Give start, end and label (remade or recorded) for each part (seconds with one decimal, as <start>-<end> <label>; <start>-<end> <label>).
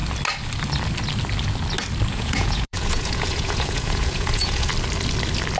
0.0-2.1 recorded; 2.1-4.7 remade; 4.7-5.6 recorded